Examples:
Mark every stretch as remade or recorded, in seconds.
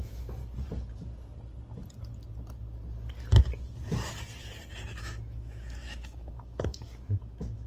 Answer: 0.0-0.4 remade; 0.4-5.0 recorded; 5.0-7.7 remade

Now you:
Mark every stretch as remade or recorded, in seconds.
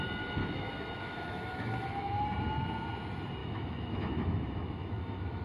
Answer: 0.0-0.4 recorded; 0.4-2.2 remade; 2.2-3.4 recorded; 3.4-5.4 remade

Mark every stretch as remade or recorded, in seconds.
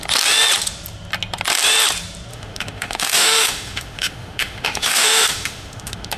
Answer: 0.0-2.3 recorded; 2.3-6.2 remade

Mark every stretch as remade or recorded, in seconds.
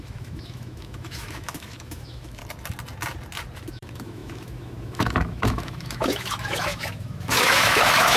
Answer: 0.0-2.4 remade; 2.4-3.7 recorded; 3.7-8.2 remade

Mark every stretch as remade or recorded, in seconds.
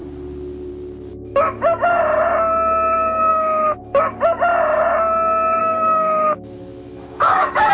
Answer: 0.0-1.1 recorded; 1.1-2.0 remade; 2.0-3.3 recorded; 3.3-3.8 remade; 3.8-5.6 recorded; 5.6-7.7 remade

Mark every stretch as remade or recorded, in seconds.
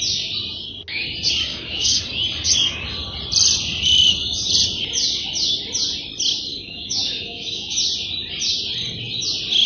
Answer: 0.0-1.5 recorded; 1.5-2.0 remade; 2.0-6.5 recorded; 6.5-7.7 remade; 7.7-9.7 recorded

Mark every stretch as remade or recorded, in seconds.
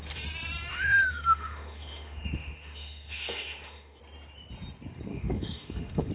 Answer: 0.0-0.7 recorded; 0.7-4.0 remade; 4.0-5.1 recorded; 5.1-6.1 remade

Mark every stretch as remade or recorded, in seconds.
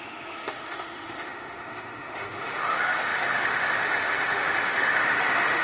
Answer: 0.0-5.6 remade